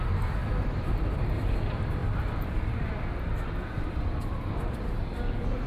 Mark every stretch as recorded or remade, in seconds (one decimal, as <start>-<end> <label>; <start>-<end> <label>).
0.0-0.4 recorded; 0.4-1.2 remade; 1.2-2.0 recorded; 2.0-4.2 remade; 4.2-5.7 recorded